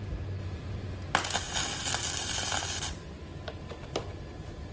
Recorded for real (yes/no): yes